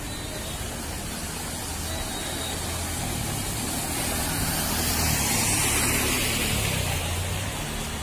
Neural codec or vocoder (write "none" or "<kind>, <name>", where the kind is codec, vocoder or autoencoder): none